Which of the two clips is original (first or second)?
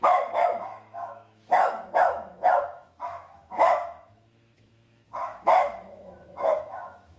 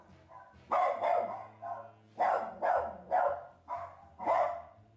second